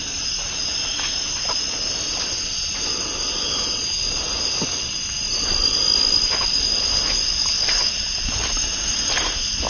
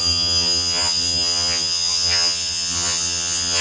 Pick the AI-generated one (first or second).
second